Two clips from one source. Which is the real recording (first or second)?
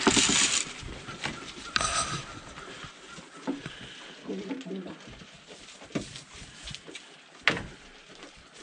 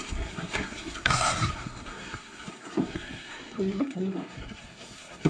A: first